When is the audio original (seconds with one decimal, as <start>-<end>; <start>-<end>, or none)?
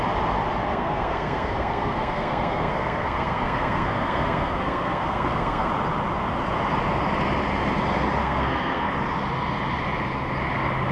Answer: 0.0-0.7; 5.7-8.2; 8.9-10.9